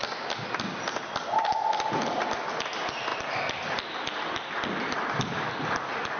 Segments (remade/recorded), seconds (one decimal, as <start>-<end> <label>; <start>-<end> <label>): 0.0-6.2 recorded

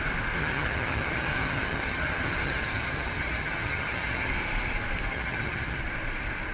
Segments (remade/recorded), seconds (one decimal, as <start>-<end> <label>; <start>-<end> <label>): 0.0-0.4 recorded; 0.4-4.3 remade; 4.3-5.1 recorded; 5.1-5.8 remade; 5.8-6.5 recorded

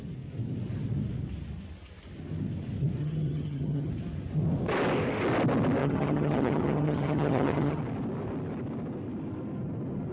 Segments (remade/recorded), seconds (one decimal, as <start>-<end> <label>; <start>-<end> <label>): 0.0-3.0 recorded; 3.0-3.9 remade; 3.9-5.8 recorded; 5.8-7.8 remade; 7.8-10.1 recorded

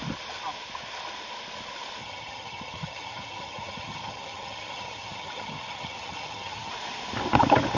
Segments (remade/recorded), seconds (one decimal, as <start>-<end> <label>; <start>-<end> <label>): 0.0-2.0 recorded; 2.0-6.7 remade; 6.7-7.8 recorded

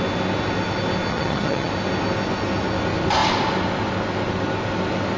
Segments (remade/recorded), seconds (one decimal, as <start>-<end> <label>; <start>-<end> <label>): 0.0-1.1 recorded; 1.1-1.7 remade; 1.7-5.2 recorded

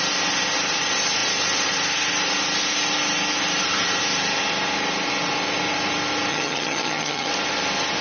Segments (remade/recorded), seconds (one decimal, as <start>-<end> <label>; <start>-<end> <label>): 0.0-6.3 recorded; 6.3-7.3 remade; 7.3-8.0 recorded

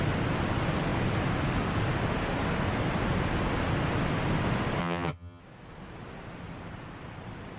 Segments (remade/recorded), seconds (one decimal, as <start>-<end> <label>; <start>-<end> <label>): 0.0-4.8 recorded; 4.8-5.4 remade; 5.4-7.6 recorded

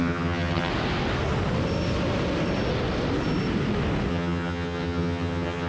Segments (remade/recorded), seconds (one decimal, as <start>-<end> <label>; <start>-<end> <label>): 0.0-0.7 remade; 0.7-4.1 recorded; 4.1-5.7 remade